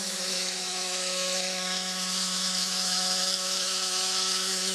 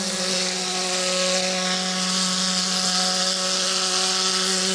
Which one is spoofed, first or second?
first